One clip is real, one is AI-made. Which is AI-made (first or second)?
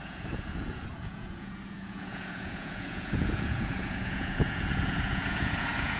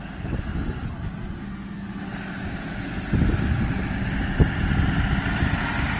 first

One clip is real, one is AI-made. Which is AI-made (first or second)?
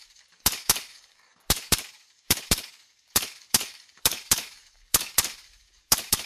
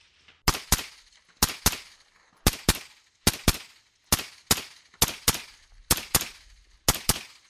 first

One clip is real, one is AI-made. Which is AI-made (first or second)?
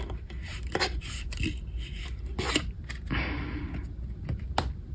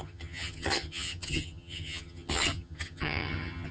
second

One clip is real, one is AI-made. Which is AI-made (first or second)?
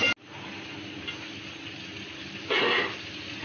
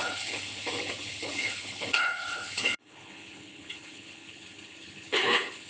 second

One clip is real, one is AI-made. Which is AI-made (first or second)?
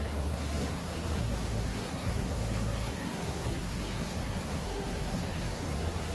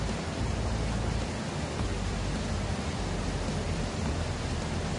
first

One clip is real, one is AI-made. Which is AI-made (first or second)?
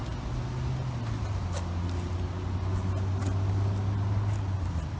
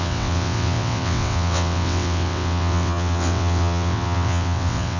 second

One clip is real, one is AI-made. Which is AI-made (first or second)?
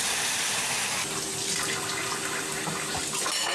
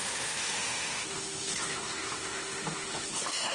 second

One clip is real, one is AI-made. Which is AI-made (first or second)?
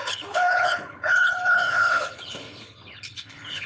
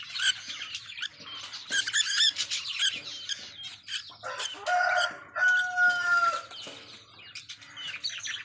first